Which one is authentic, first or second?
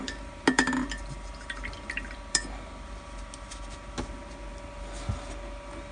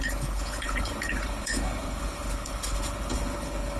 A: first